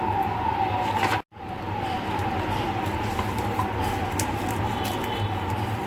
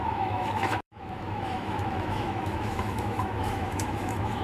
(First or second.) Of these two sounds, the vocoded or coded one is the second